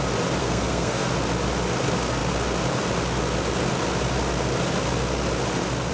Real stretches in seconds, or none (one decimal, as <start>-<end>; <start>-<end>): 0.0-0.4; 1.1-5.9